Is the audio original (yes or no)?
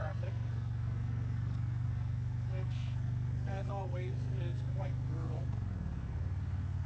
no